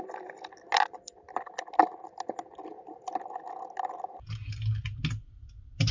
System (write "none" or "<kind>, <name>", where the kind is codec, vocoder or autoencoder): none